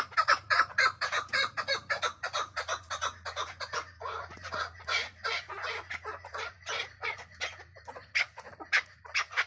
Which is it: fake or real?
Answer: fake